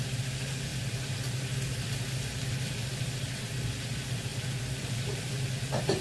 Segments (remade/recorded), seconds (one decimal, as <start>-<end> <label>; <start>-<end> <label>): 0.0-6.0 recorded

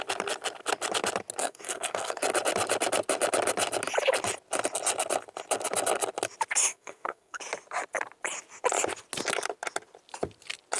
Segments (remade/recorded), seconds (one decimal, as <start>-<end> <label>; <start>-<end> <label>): 0.0-1.4 recorded; 1.4-2.2 remade; 2.2-6.7 recorded; 6.7-7.4 remade; 7.4-10.8 recorded